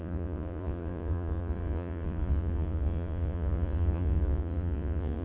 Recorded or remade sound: remade